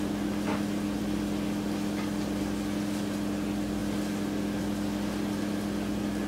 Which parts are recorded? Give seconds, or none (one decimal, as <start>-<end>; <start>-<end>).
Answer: 0.0-6.3